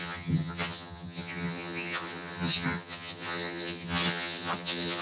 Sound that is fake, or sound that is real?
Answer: fake